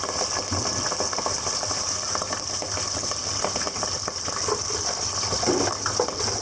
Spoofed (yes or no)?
no